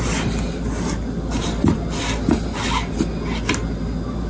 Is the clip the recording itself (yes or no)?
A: yes